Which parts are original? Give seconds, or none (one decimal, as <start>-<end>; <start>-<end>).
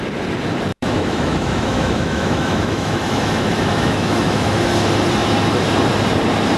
0.0-0.7; 4.6-6.6